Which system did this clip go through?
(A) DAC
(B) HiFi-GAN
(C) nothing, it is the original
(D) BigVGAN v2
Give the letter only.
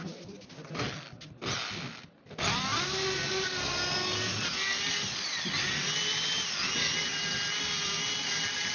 C